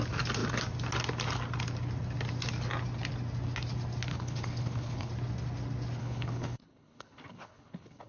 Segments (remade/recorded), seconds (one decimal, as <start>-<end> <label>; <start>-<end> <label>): 0.0-4.1 recorded; 4.1-5.1 remade; 5.1-6.0 recorded; 6.0-8.1 remade